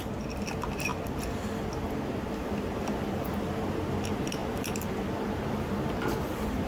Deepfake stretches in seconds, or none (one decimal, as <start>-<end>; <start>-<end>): none

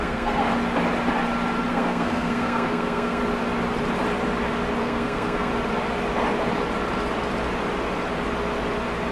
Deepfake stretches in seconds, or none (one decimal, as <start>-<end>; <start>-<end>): 0.0-0.5; 1.7-3.2; 4.8-5.5

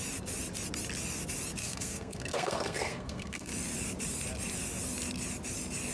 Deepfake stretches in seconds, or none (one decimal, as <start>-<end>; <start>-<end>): 1.6-3.5

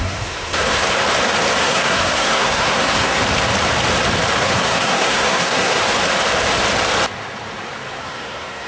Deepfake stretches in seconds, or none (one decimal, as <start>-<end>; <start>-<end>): 0.0-0.8; 1.6-3.2; 4.4-5.8; 8.0-8.7

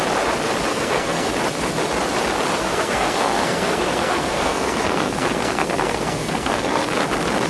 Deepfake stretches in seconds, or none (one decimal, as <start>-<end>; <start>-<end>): 0.7-1.3; 2.6-7.1

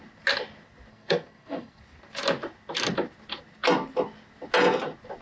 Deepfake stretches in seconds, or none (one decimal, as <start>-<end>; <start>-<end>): 0.9-1.8